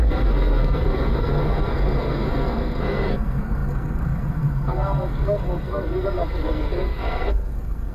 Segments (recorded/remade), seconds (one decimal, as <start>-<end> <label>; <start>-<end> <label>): 0.0-7.9 remade